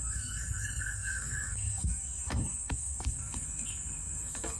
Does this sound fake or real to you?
fake